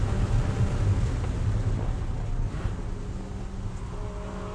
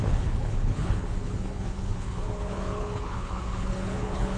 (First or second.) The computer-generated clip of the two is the second